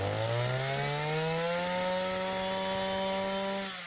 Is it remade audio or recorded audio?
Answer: recorded